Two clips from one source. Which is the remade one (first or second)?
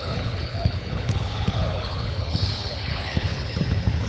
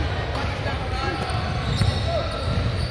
first